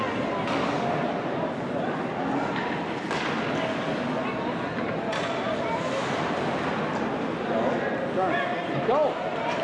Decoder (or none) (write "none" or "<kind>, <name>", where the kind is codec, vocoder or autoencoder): none